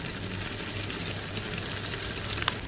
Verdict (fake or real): real